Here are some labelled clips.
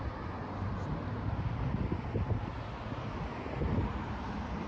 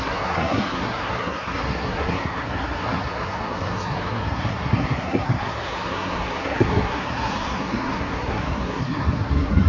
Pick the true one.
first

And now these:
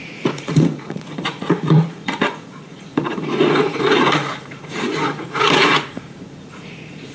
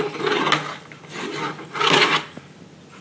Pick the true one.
second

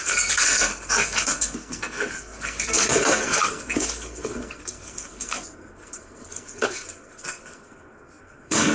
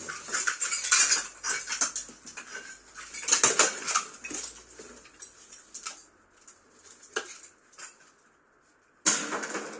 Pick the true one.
second